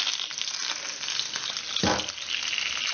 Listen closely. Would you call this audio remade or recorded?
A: recorded